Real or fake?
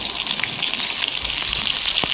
real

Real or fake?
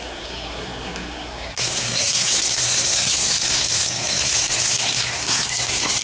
fake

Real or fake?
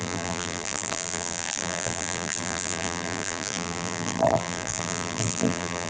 fake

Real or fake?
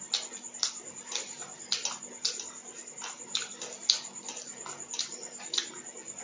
real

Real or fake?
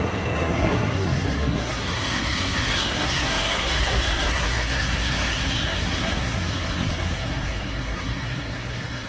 fake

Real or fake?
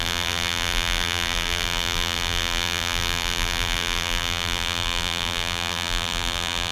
fake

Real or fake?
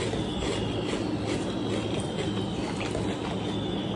real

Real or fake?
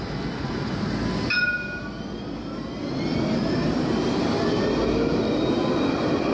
real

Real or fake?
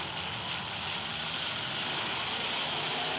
real